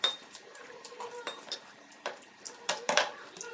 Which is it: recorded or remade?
remade